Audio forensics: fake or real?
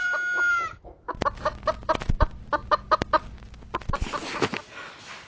real